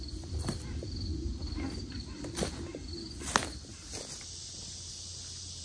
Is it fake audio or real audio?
real